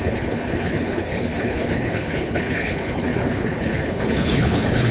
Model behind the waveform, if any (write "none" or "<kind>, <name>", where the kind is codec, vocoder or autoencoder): codec, HILCodec